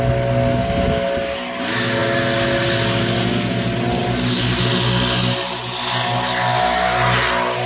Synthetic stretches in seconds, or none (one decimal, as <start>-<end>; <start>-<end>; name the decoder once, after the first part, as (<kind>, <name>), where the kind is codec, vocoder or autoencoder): none